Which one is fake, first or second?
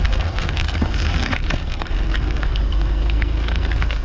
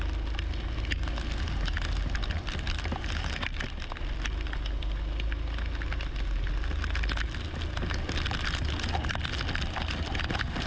first